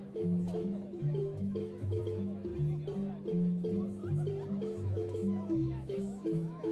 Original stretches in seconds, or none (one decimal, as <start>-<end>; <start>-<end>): 2.5-4.5